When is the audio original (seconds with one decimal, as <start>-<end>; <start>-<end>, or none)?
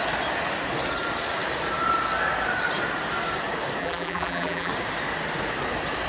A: 0.0-3.8; 4.7-6.1